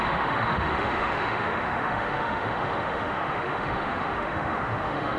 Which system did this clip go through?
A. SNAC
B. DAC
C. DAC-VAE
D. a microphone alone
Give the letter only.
C